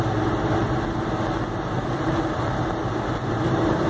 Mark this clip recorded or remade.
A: recorded